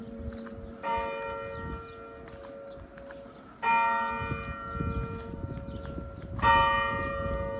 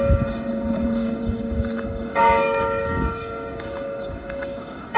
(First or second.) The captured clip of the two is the first